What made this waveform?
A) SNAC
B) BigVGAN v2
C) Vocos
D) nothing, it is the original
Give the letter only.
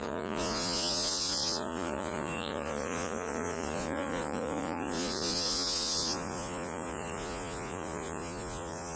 C